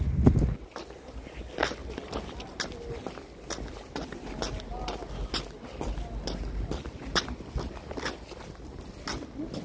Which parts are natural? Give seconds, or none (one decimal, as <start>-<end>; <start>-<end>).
0.0-9.6